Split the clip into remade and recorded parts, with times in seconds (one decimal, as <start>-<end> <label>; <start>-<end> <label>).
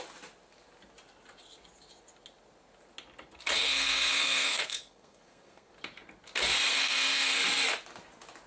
0.0-3.6 recorded; 3.6-5.7 remade; 5.7-6.7 recorded; 6.7-7.4 remade; 7.4-8.5 recorded